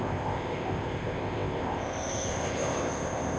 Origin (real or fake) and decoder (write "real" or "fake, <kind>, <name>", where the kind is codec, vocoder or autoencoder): fake, codec, ZipCodec